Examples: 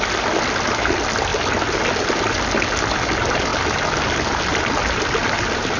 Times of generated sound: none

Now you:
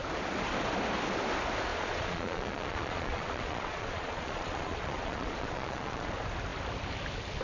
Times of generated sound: 1.7-6.1

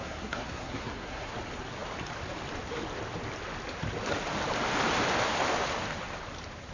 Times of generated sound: 0.0-1.3

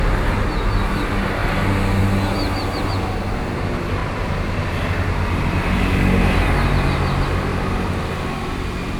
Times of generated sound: 4.0-4.5; 7.5-8.0

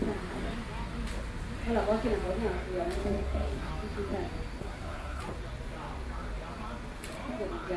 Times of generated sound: 3.0-3.7; 4.6-5.2

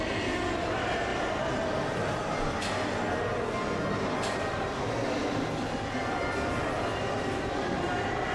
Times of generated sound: 0.0-1.1; 5.7-8.3

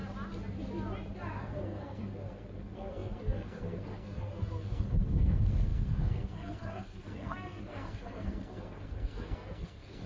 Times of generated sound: 1.4-10.1

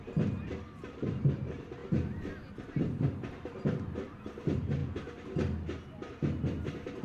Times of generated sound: 0.0-4.8; 6.6-7.0